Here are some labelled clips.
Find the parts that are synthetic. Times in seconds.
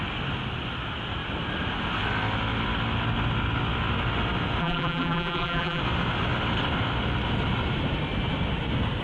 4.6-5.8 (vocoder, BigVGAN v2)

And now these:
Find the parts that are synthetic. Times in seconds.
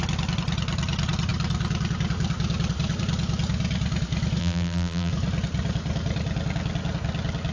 4.4-5.1 (vocoder, BigVGAN v2)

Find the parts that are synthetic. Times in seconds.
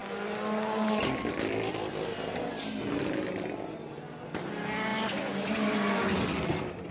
none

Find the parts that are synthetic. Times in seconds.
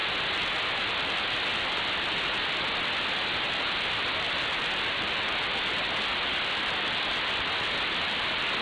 none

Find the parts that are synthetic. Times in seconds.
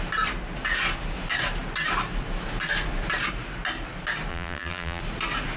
4.3-5.0 (vocoder, BigVGAN v2)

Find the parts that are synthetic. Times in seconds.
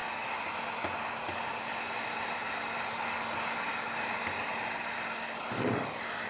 0.0-2.4 (vocoder, BigVGAN v2)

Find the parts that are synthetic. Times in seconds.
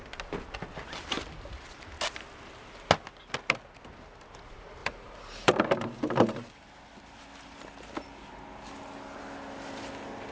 4.8-6.7 (vocoder, BigVGAN v2)